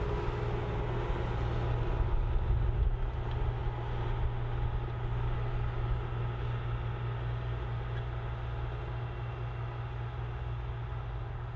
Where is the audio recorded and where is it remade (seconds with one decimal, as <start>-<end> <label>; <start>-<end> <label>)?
0.0-11.6 recorded